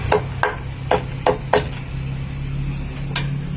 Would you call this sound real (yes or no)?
yes